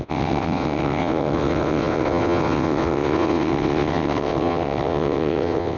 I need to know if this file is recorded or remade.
remade